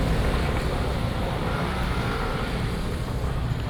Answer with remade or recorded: remade